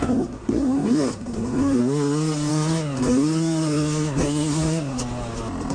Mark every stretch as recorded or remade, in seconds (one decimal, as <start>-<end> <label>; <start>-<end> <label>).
0.0-1.8 remade; 1.8-2.5 recorded; 2.5-5.0 remade; 5.0-5.7 recorded